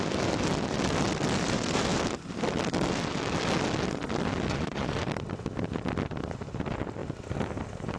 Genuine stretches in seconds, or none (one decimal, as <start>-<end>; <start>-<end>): 0.0-4.5; 5.0-8.0